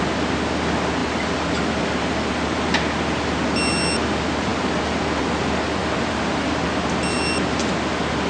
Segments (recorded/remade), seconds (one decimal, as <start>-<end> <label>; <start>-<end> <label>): 0.0-8.3 recorded